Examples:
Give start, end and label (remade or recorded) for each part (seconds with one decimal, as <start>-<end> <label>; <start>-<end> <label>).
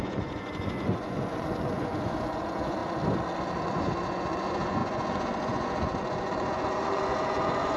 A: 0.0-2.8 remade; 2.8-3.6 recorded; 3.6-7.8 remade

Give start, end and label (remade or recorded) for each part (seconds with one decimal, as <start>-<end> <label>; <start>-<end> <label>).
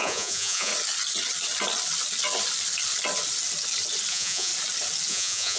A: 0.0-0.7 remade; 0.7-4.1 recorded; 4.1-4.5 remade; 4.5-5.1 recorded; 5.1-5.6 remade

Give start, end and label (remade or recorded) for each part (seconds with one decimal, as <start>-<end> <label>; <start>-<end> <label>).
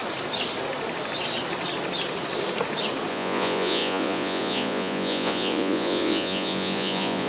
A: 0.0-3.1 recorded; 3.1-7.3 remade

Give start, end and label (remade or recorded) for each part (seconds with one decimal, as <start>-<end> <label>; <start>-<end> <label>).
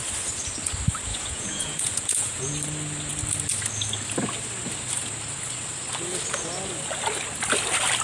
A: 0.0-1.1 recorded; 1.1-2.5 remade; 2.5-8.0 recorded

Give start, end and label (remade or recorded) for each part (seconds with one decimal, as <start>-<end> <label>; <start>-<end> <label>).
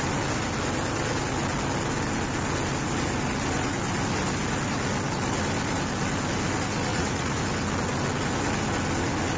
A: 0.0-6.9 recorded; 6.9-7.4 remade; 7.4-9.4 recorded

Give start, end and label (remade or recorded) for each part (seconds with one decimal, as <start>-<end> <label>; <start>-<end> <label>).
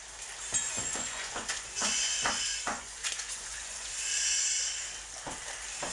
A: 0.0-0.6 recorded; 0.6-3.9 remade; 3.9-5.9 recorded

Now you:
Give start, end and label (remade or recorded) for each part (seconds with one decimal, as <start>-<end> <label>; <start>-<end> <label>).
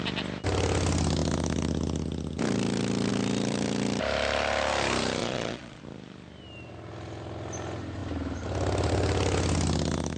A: 0.0-5.2 recorded; 5.2-5.8 remade; 5.8-10.2 recorded